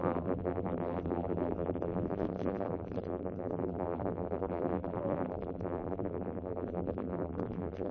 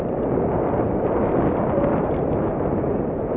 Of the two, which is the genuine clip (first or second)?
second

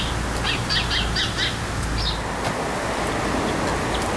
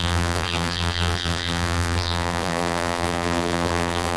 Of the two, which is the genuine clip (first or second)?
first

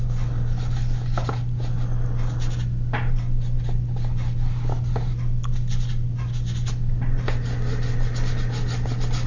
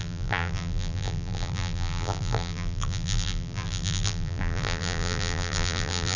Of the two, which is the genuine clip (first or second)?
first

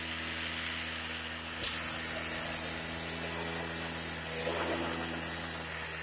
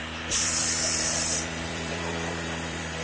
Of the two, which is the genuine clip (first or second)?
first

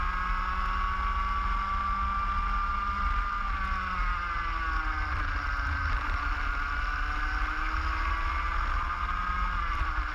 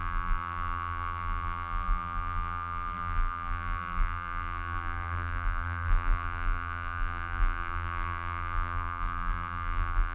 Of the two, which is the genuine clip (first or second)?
first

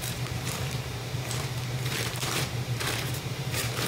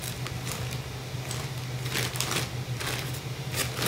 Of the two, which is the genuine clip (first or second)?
second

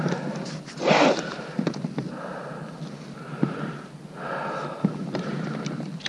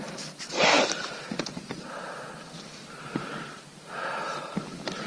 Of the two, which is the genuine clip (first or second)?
first